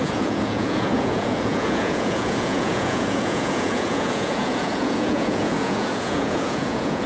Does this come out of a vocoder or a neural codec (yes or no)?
yes